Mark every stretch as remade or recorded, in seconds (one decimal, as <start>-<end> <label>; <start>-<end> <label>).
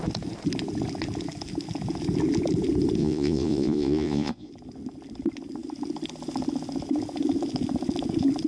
0.0-3.0 recorded; 3.0-4.5 remade; 4.5-8.5 recorded